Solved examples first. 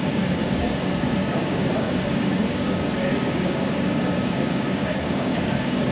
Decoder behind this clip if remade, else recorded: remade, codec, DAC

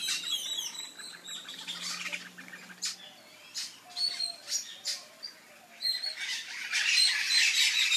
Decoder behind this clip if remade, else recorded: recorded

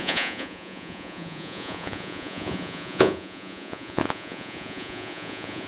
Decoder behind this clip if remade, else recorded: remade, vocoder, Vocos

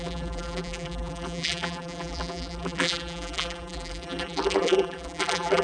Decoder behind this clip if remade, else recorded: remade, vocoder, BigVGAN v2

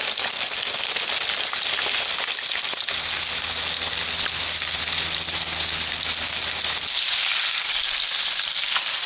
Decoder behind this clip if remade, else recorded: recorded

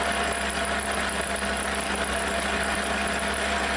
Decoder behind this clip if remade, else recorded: recorded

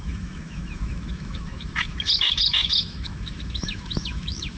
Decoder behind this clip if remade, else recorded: remade, autoencoder, DAC-VAE